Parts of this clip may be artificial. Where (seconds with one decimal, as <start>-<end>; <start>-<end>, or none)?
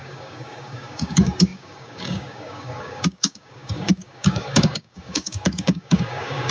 0.0-6.5